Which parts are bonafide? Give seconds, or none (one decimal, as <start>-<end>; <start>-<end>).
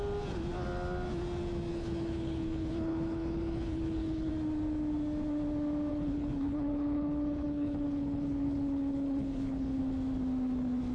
0.0-1.7; 4.3-5.9; 9.8-10.9